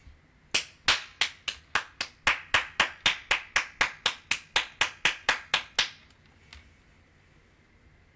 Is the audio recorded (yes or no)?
yes